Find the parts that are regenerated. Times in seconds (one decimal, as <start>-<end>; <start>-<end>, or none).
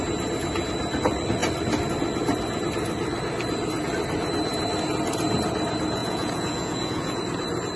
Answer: 6.0-7.2